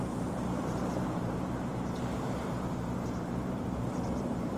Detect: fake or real fake